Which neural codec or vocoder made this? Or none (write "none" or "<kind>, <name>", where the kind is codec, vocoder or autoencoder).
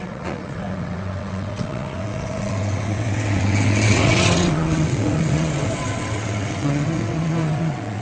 vocoder, WaveNeXt